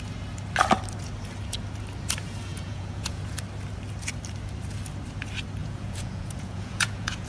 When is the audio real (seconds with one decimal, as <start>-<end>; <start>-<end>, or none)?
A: 0.0-2.5; 3.2-5.6